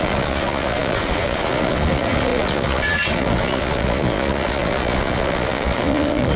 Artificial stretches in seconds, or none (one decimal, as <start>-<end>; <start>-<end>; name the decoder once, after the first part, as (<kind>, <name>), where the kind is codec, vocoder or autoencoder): 0.0-6.4 (vocoder, Vocos)